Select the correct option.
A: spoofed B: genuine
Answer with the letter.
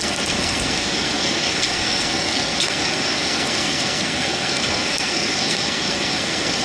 A